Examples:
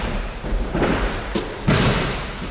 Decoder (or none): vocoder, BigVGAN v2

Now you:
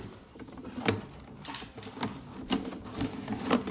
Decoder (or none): none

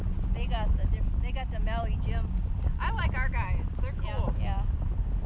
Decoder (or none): none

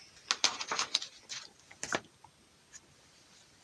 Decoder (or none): none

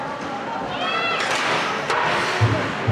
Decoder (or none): none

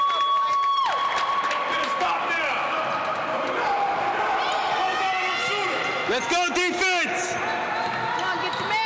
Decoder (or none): none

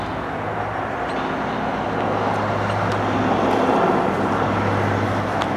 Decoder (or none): none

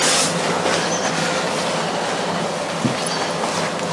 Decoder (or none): none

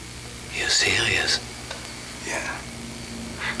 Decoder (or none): none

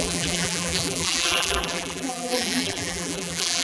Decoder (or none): vocoder, BigVGAN v2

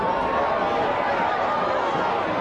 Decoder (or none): none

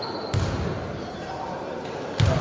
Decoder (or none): vocoder, BigVGAN v2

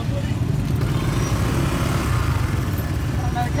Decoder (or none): none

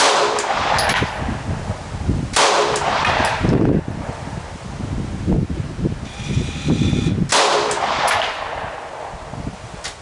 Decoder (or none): none